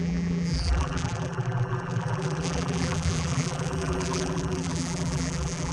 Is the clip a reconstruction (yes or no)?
yes